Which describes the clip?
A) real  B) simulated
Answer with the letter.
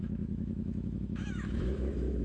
B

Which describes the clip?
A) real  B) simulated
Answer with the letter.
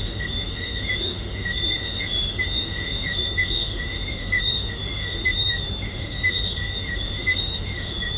B